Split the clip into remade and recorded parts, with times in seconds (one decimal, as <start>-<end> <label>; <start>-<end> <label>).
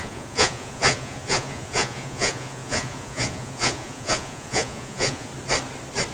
0.0-5.3 remade; 5.3-6.1 recorded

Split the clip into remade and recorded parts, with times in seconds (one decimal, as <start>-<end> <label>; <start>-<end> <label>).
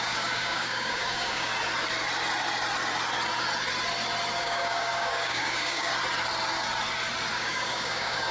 0.0-1.5 remade; 1.5-4.4 recorded; 4.4-5.9 remade; 5.9-7.3 recorded; 7.3-8.3 remade